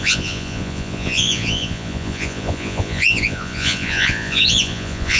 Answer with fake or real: fake